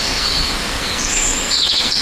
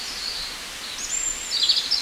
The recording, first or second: second